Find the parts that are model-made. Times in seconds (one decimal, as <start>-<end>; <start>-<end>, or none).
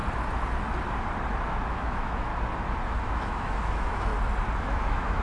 1.7-2.3; 3.0-4.1; 4.6-5.2